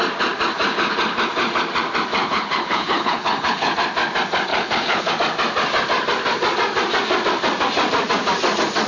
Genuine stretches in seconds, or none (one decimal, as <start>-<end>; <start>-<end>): 0.0-2.2; 3.7-4.5; 5.1-8.9